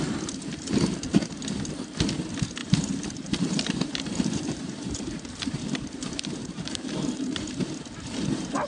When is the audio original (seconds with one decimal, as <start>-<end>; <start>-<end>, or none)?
0.0-2.6; 7.6-8.7